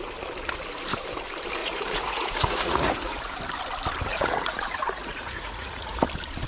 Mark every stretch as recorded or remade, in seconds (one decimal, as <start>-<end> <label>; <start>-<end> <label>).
0.0-1.6 recorded; 1.6-3.3 remade; 3.3-4.1 recorded; 4.1-6.0 remade; 6.0-6.5 recorded